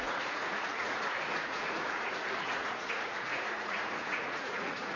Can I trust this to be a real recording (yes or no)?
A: no